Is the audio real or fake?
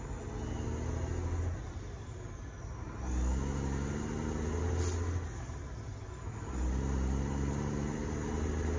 real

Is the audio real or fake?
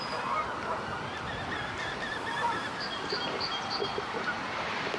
fake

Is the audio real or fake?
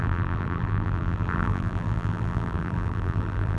fake